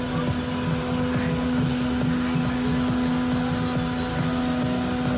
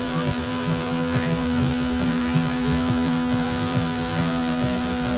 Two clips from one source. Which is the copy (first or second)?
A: second